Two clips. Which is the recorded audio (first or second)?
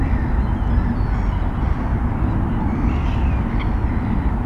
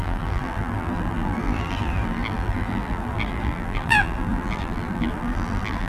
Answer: first